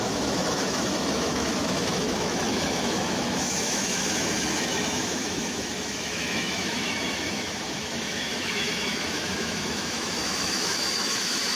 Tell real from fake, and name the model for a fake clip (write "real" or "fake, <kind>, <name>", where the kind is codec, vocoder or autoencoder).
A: fake, autoencoder, DAC-VAE